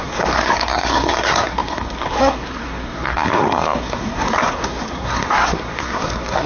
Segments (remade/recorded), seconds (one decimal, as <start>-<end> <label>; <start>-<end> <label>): 0.0-6.5 remade

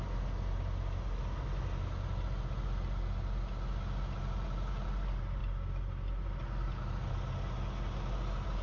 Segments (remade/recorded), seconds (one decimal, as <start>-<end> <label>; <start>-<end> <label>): 0.0-8.6 recorded